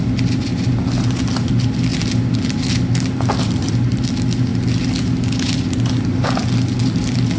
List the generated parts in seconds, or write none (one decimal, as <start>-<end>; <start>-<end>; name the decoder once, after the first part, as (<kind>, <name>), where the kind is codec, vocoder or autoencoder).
3.6-4.1 (vocoder, BigVGAN v2)